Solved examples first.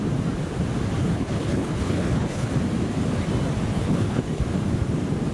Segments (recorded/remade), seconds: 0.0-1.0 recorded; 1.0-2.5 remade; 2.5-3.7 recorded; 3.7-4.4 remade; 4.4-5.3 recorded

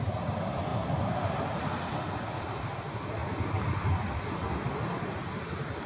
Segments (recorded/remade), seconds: 0.0-5.9 remade

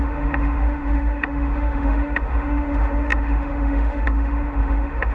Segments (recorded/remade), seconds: 0.0-5.1 remade